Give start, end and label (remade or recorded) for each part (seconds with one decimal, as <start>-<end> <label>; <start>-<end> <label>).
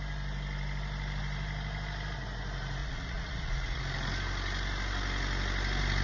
0.0-2.8 recorded; 2.8-3.8 remade; 3.8-6.0 recorded